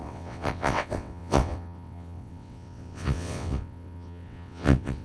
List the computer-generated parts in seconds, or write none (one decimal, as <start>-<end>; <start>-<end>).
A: 0.0-5.0